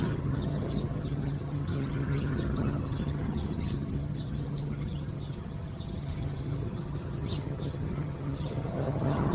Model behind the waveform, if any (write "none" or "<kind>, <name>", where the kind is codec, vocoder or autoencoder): vocoder, HiFi-GAN